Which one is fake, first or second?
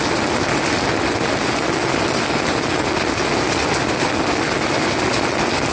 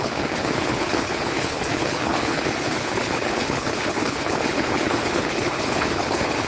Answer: second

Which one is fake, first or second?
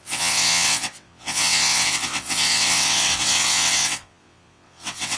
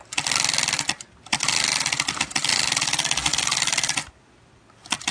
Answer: first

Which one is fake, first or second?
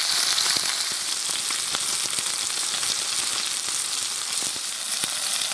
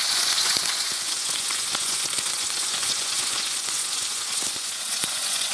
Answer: second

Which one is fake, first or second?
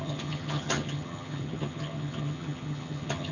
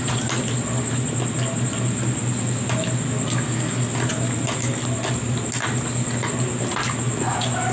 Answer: first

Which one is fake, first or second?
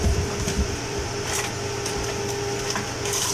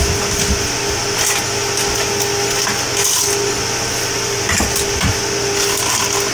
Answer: first